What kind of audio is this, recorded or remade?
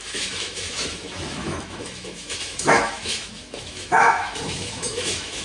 remade